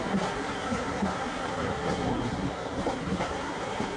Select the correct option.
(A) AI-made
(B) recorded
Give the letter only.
A